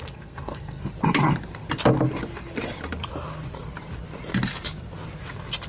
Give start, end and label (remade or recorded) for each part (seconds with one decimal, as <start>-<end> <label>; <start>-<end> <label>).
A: 0.0-0.8 remade; 0.8-5.7 recorded